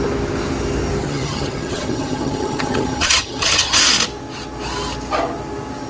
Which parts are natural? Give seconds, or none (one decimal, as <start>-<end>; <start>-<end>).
0.0-1.0; 3.8-5.9